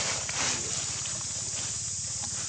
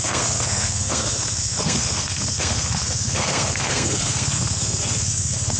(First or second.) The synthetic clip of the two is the second